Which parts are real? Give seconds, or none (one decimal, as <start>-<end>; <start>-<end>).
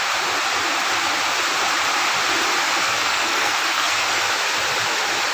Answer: 0.0-2.8; 4.2-5.3